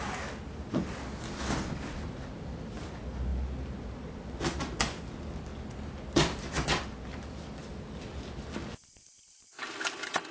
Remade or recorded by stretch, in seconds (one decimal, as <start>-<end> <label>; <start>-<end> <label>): 0.0-10.3 recorded